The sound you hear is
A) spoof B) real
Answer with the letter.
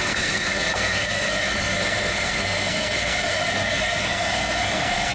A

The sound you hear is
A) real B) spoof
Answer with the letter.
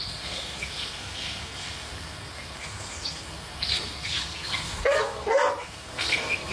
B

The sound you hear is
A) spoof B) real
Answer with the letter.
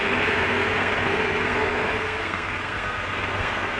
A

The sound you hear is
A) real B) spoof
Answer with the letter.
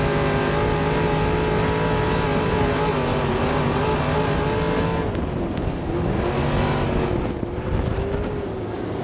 A